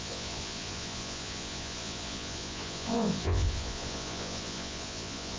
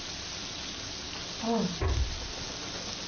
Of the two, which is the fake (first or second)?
first